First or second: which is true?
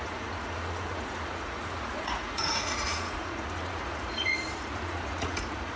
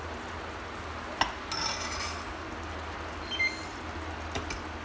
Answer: second